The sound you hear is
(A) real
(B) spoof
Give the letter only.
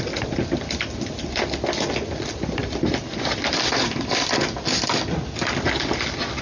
A